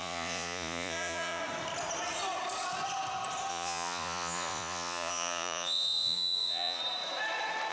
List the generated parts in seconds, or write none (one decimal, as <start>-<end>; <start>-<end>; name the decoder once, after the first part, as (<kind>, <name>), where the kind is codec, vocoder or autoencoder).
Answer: 0.0-1.4 (vocoder, Vocos); 3.5-6.8